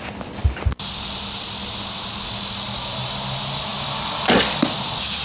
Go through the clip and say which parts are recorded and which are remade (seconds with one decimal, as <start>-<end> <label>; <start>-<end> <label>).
0.0-5.2 recorded